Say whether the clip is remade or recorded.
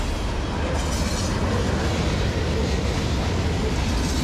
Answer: recorded